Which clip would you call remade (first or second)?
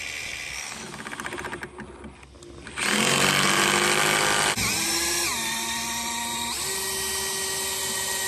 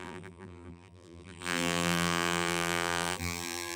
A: second